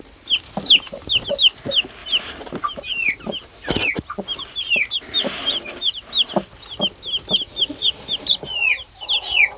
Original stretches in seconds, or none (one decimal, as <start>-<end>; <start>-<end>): 0.0-2.0; 6.3-7.8; 8.5-9.6